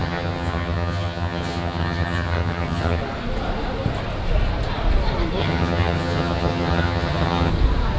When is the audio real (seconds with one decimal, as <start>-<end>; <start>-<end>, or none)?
3.0-5.4; 7.5-8.0